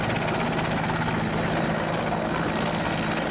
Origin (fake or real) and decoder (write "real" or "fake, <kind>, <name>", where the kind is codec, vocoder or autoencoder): real